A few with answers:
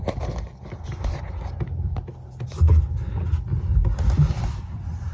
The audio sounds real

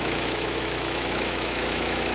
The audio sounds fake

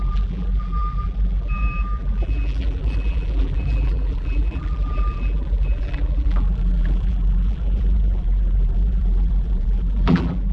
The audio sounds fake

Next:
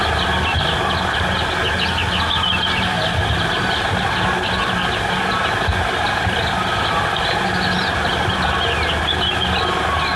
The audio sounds real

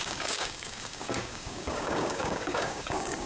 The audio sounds fake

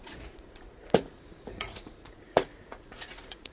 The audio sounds fake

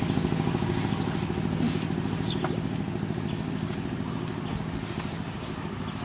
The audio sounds real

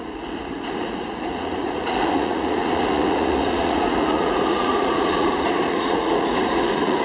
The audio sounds fake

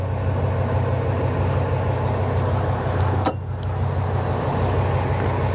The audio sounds real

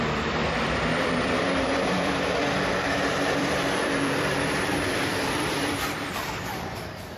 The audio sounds fake